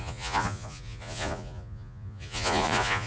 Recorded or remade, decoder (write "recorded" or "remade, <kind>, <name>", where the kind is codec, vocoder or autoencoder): remade, vocoder, Vocos